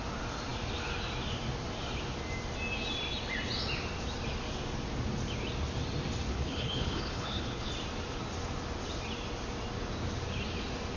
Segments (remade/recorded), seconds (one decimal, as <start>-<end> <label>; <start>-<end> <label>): 0.0-6.3 recorded; 6.3-7.7 remade; 7.7-11.0 recorded